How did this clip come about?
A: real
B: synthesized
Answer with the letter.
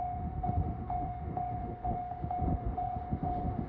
B